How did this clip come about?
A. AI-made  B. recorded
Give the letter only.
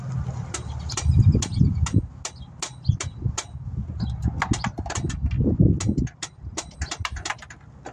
B